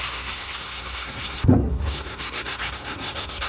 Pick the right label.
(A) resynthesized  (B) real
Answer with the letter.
A